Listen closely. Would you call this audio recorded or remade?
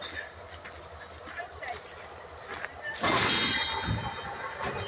recorded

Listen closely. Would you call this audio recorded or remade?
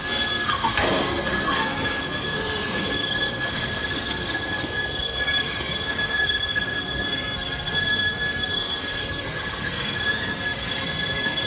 remade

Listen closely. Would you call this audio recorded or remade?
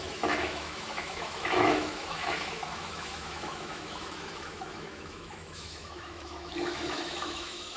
remade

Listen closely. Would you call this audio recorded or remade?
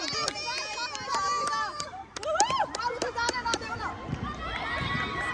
recorded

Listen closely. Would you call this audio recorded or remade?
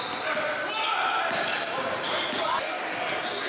recorded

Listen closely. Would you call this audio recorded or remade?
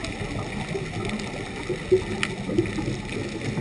recorded